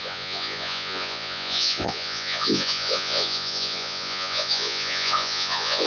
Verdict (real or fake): fake